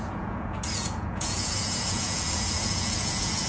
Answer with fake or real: fake